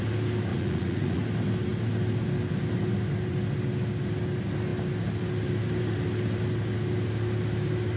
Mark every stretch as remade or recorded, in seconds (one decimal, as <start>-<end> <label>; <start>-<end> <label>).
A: 0.0-0.5 recorded; 0.5-1.2 remade; 1.2-8.0 recorded

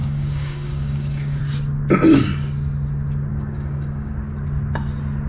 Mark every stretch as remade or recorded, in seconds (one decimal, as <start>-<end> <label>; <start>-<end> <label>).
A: 0.0-1.4 remade; 1.4-3.3 recorded; 3.3-4.1 remade; 4.1-5.3 recorded

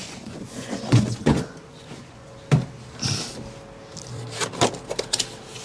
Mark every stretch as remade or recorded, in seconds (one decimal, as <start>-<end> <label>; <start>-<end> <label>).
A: 0.0-2.4 remade; 2.4-5.6 recorded

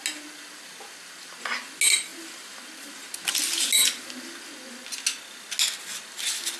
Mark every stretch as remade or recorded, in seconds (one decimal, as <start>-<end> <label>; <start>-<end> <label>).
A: 0.0-6.6 recorded

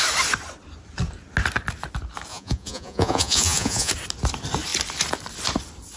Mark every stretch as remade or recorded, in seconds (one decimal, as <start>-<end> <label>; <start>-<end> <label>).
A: 0.0-2.3 recorded; 2.3-3.9 remade; 3.9-6.0 recorded

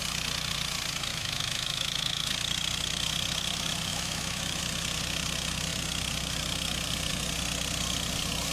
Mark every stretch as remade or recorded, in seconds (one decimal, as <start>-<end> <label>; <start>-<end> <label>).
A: 0.0-1.1 recorded; 1.1-2.3 remade; 2.3-3.9 recorded; 3.9-4.6 remade; 4.6-8.5 recorded

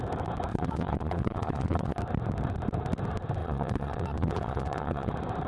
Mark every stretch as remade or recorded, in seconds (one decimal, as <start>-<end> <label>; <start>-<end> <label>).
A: 0.0-0.5 recorded; 0.5-2.0 remade; 2.0-3.4 recorded; 3.4-5.1 remade; 5.1-5.5 recorded

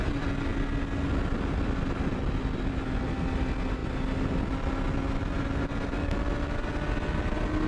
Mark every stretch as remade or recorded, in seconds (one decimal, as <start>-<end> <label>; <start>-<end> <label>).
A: 0.0-7.7 recorded